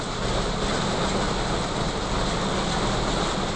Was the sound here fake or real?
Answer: real